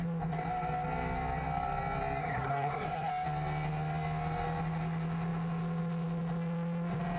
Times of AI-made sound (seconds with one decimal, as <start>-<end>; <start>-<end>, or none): 2.2-3.1